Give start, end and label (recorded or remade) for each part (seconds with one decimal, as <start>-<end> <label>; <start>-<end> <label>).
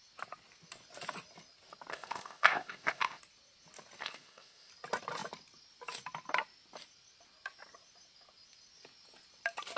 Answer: 0.0-1.9 recorded; 1.9-3.2 remade; 3.2-4.0 recorded; 4.0-4.7 remade; 4.7-9.8 recorded